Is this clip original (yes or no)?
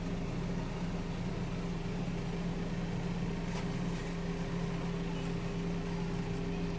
yes